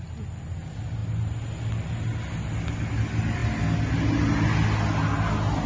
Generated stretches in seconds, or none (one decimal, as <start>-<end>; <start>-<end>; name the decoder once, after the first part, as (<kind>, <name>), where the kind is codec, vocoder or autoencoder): none